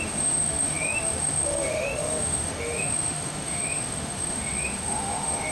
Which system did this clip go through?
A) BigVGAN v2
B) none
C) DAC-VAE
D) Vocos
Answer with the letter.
C